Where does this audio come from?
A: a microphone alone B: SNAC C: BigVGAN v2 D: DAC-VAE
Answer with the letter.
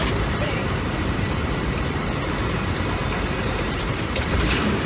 C